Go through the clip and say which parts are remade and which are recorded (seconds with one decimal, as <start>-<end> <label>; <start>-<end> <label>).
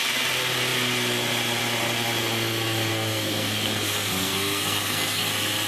0.0-2.9 recorded; 2.9-5.3 remade; 5.3-5.7 recorded